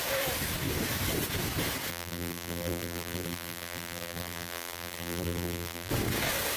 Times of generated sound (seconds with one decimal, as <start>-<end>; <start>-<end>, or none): 1.9-5.9